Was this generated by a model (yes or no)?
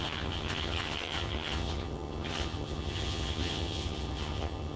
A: yes